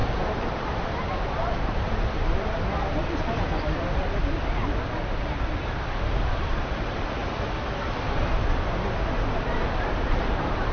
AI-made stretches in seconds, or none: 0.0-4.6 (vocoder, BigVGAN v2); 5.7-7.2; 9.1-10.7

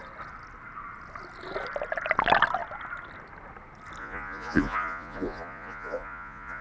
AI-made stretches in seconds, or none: 4.0-6.6 (vocoder, Vocos)

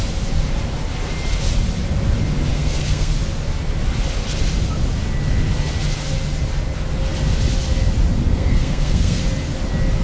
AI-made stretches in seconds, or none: 2.5-3.1 (codec, SNAC); 8.3-9.2

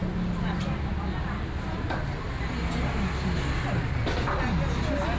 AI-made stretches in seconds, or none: none

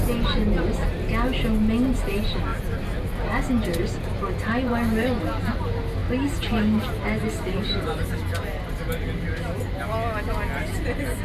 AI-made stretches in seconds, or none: none

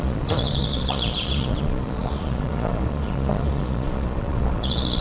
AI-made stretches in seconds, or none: 0.0-5.0 (vocoder, Vocos)

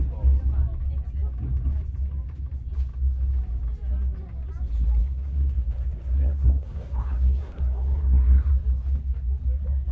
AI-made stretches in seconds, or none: 5.0-8.5 (codec, SNAC)

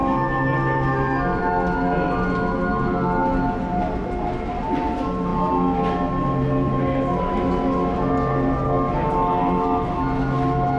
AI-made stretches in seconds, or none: none